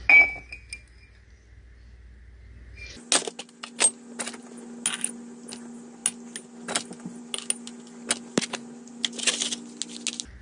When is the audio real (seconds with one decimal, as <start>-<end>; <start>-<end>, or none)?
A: 0.0-10.4